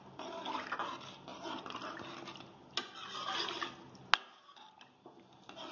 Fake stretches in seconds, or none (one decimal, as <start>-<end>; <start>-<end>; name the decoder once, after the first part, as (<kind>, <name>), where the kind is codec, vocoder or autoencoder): none